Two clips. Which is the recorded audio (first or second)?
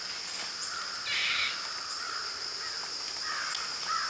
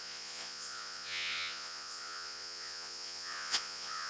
first